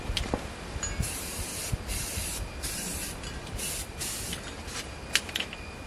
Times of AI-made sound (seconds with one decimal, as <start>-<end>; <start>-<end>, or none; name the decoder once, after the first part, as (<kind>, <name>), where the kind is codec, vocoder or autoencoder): 1.5-5.0 (vocoder, BigVGAN v2)